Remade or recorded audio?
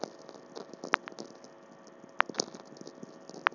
recorded